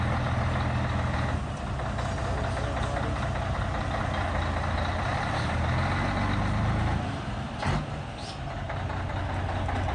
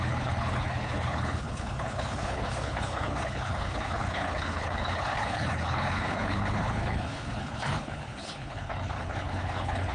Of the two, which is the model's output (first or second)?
second